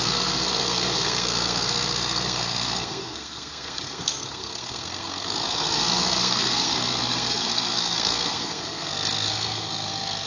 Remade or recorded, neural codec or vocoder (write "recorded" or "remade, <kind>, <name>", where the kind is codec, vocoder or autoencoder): remade, codec, SNAC